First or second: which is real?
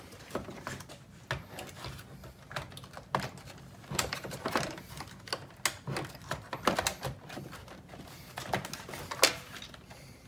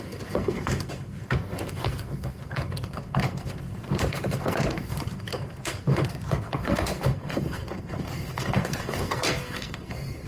first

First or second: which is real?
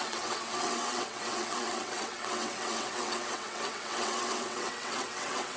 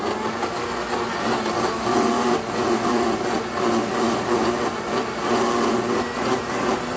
second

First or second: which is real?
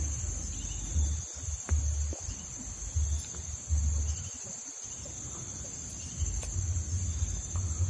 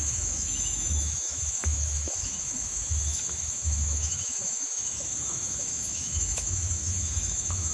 first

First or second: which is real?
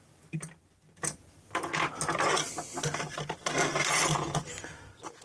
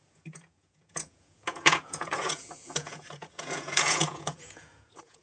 first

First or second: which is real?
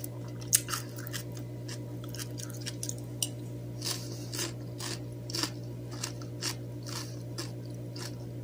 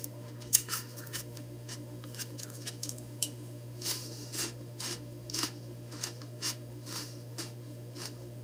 first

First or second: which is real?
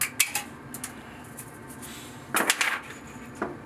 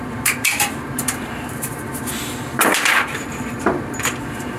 first